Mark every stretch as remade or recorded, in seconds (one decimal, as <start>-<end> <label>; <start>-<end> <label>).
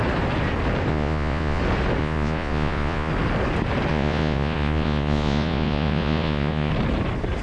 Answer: 0.0-0.9 recorded; 0.9-1.6 remade; 1.6-2.0 recorded; 2.0-3.1 remade; 3.1-3.9 recorded; 3.9-6.7 remade; 6.7-7.4 recorded